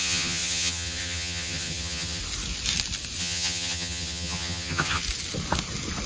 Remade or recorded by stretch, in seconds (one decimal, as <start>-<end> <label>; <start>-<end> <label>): 0.0-2.2 remade; 2.2-3.2 recorded; 3.2-5.0 remade; 5.0-6.1 recorded